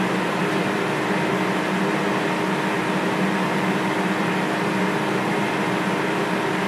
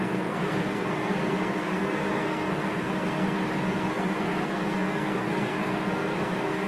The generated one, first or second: second